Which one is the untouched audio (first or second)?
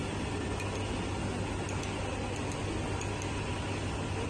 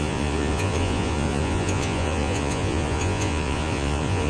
first